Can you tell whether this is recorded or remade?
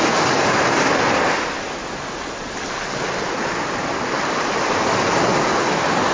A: recorded